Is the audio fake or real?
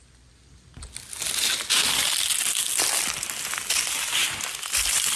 real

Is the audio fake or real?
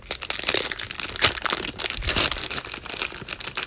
real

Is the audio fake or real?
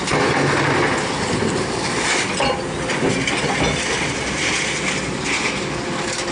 real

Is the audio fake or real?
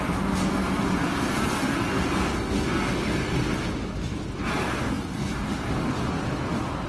real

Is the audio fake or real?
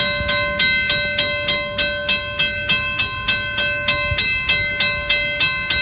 real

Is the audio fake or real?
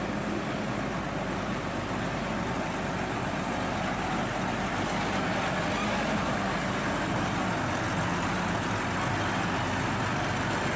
real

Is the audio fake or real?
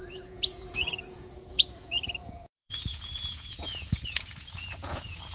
fake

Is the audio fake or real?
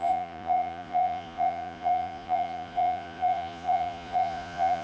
fake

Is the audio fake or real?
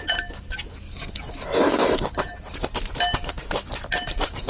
real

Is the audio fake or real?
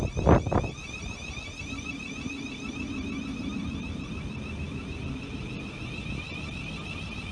real